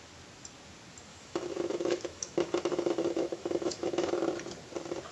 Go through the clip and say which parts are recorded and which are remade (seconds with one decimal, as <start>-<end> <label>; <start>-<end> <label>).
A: 0.0-1.1 recorded; 1.1-4.2 remade; 4.2-5.1 recorded